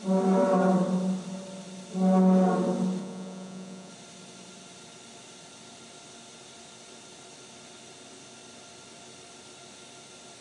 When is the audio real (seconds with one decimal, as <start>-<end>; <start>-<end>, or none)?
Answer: 0.0-3.0; 3.9-10.4